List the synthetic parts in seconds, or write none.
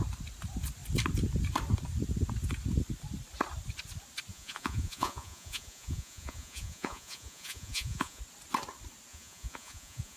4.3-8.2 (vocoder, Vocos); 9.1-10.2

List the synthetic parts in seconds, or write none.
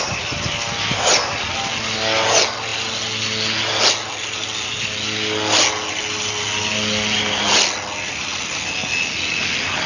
none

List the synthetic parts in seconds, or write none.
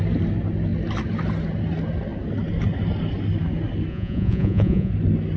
3.9-4.9 (vocoder, Vocos)